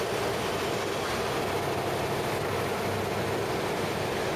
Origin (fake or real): real